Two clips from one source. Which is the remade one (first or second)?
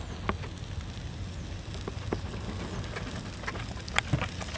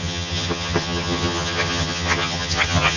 second